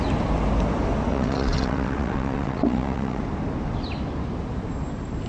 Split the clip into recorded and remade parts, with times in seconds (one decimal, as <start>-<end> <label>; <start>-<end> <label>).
0.0-1.1 recorded; 1.1-3.2 remade; 3.2-5.3 recorded